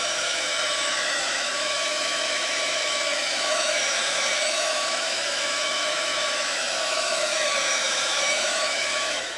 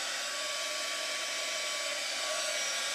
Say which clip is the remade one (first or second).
first